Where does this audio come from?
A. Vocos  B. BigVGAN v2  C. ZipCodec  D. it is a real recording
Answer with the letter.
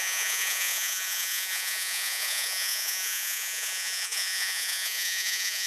A